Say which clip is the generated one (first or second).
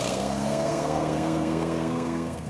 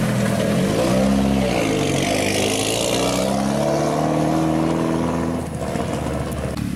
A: first